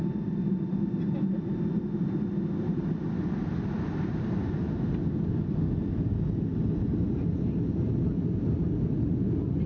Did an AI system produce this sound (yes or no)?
no